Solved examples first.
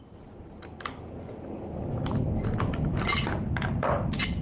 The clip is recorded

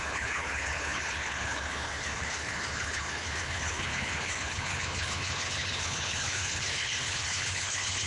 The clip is remade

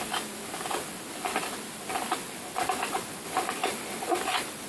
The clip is recorded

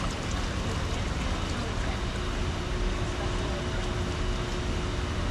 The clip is recorded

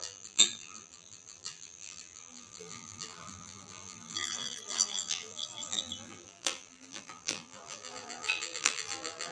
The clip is remade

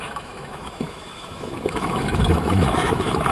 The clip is remade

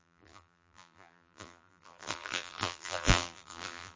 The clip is remade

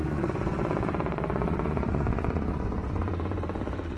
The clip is remade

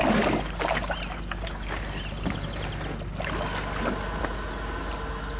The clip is recorded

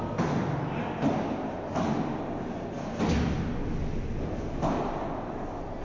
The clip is recorded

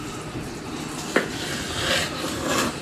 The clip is recorded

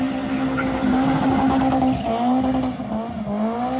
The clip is recorded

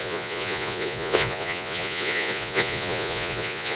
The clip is remade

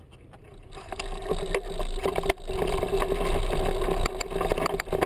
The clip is recorded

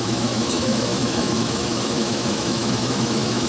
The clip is remade